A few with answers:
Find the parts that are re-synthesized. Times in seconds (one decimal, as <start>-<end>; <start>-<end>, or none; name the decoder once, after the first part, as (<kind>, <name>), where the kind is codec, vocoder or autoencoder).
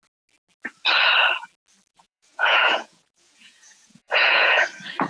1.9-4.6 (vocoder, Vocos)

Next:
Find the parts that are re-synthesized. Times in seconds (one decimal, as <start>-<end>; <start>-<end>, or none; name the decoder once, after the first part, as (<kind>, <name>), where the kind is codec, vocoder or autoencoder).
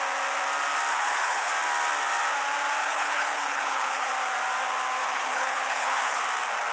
0.9-1.5 (codec, HILCodec); 2.8-4.1; 5.0-6.2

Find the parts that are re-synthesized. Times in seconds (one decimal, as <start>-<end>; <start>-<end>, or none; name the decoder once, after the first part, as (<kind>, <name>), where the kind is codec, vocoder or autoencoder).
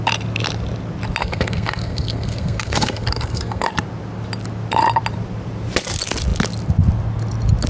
1.2-3.7 (codec, SNAC)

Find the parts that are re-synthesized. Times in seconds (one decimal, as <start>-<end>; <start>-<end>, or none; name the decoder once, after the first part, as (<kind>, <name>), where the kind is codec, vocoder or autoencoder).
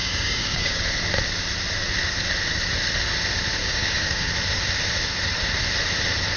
0.0-0.8 (codec, DAC); 3.6-4.3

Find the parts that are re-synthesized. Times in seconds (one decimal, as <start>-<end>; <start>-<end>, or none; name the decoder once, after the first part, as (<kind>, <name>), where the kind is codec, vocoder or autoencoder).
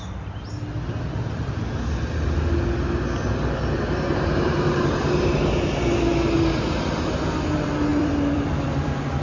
7.9-9.2 (vocoder, BigVGAN v2)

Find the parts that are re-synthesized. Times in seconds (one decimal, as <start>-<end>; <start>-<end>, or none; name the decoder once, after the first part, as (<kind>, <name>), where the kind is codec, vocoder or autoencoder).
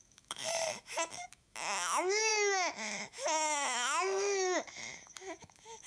0.0-5.9 (autoencoder, DAC-VAE)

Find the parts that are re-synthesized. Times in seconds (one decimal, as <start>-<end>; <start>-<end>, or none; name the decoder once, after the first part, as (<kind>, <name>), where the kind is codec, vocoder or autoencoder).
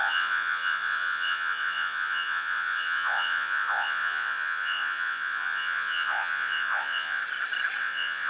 0.0-7.2 (vocoder, Vocos); 7.8-8.3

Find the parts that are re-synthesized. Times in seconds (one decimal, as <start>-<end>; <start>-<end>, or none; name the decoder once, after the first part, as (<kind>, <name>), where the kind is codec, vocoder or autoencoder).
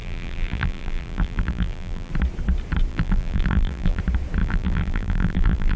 0.0-2.1 (vocoder, BigVGAN v2); 2.9-4.0; 4.4-5.8